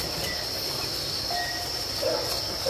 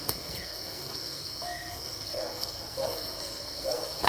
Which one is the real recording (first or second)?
first